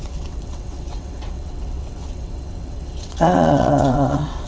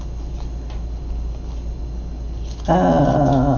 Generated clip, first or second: first